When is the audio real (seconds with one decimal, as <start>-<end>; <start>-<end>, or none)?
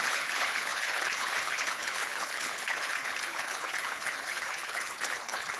none